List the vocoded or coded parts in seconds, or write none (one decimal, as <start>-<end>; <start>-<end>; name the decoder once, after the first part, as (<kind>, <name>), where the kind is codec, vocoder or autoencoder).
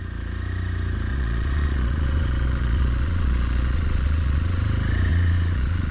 1.1-4.6 (vocoder, Vocos); 5.1-5.9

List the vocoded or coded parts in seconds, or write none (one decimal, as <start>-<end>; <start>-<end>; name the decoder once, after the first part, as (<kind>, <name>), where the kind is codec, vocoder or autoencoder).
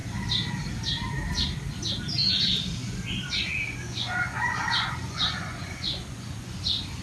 2.8-7.0 (vocoder, Vocos)